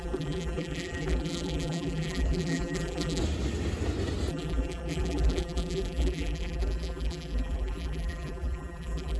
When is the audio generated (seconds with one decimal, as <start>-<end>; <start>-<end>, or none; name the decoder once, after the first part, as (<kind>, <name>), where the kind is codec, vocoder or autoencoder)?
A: 0.0-3.2 (vocoder, BigVGAN v2); 4.3-9.2